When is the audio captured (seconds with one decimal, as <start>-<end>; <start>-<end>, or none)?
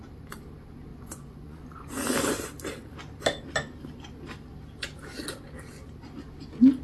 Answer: 0.0-0.9; 1.9-6.8